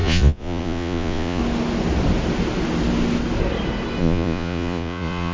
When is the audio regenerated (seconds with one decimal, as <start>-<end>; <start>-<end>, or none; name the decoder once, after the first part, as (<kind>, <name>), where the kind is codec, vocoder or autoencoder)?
0.0-1.4 (vocoder, Vocos); 4.0-5.3